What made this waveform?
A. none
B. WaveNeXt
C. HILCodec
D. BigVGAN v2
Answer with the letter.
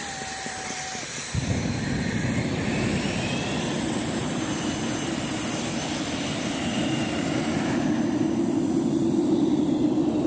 A